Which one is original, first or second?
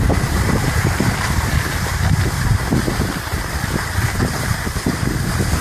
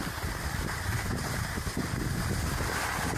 second